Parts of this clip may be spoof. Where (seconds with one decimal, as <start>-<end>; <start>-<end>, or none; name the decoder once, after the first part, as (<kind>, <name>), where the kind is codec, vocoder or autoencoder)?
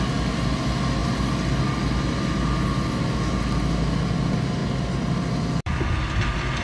4.6-5.7 (vocoder, BigVGAN v2)